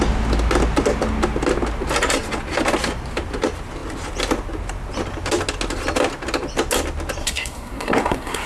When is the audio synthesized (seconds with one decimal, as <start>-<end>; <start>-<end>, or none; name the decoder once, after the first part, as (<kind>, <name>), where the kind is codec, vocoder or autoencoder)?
7.2-8.5 (codec, SNAC)